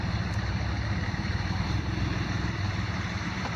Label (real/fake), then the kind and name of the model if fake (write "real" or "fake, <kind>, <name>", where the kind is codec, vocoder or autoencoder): fake, vocoder, BigVGAN v2